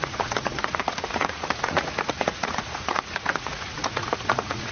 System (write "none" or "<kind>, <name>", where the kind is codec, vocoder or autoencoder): vocoder, Vocos